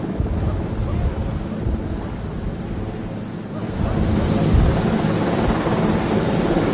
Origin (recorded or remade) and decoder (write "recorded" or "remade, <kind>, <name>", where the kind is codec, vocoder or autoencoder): recorded